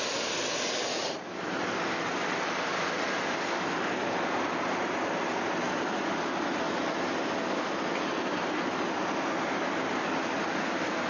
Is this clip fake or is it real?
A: real